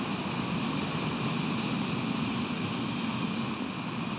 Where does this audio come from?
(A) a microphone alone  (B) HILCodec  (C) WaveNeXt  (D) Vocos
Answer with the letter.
A